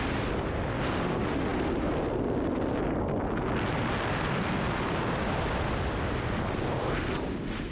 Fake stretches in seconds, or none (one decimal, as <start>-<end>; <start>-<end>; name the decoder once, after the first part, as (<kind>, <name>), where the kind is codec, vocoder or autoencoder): none